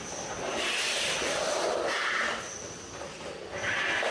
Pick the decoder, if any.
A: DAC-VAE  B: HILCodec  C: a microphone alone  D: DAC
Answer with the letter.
C